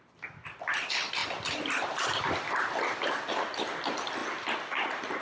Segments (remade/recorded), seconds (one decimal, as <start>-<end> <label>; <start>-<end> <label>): 0.0-5.2 recorded